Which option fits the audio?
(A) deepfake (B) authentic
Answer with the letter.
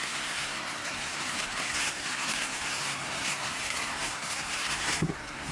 A